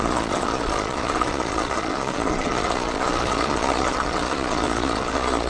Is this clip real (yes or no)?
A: no